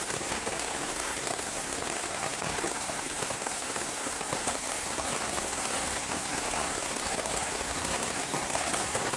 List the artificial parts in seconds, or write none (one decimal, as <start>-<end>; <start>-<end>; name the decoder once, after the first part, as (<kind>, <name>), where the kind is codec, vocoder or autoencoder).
0.0-9.2 (codec, SNAC)